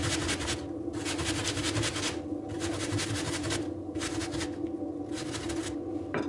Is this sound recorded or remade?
recorded